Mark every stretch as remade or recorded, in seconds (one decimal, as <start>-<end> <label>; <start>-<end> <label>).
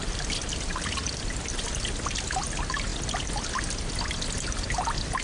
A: 0.0-1.7 remade; 1.7-5.2 recorded